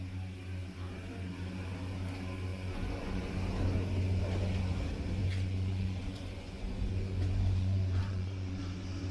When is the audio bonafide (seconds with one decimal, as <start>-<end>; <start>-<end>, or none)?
0.0-2.5; 3.3-5.2; 8.6-9.1